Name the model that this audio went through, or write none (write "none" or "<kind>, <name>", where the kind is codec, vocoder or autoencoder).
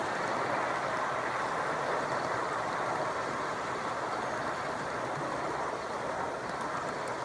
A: none